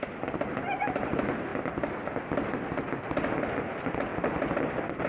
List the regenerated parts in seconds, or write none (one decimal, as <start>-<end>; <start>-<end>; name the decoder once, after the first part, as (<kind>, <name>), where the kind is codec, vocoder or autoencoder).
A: none